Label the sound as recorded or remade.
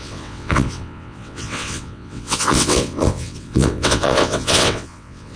remade